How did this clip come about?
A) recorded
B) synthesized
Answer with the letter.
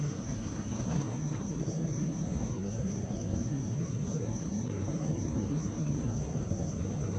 B